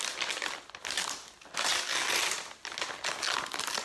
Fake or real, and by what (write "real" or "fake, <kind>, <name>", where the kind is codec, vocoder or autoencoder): real